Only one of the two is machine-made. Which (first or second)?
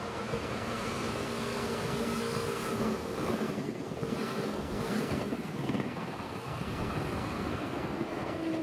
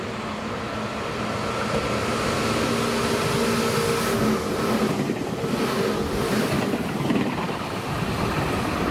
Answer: first